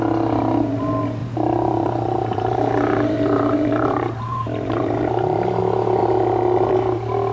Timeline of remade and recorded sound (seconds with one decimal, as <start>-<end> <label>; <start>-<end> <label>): 0.0-1.2 recorded; 1.2-5.6 remade; 5.6-7.3 recorded